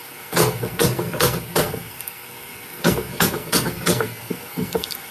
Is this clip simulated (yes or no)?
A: yes